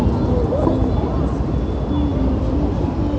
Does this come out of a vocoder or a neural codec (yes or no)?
no